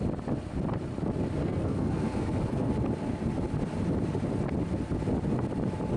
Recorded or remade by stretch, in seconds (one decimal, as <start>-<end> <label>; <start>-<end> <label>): 0.0-1.4 recorded; 1.4-2.7 remade; 2.7-6.0 recorded